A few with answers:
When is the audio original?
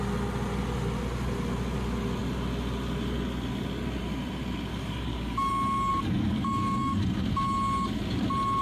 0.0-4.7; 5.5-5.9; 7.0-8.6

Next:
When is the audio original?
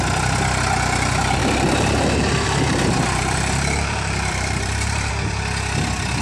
0.0-1.4; 5.1-6.2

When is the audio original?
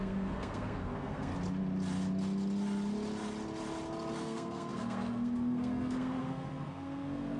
1.3-4.2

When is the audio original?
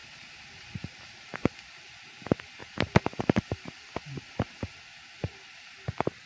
1.5-2.6; 5.5-6.3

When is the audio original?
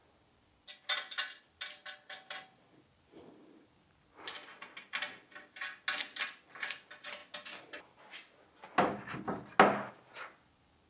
0.0-10.9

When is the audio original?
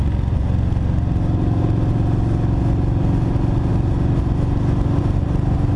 0.0-5.8